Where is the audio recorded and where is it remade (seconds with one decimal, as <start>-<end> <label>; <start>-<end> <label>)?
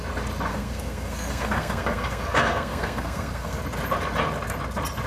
0.0-0.5 recorded; 0.5-3.6 remade; 3.6-5.1 recorded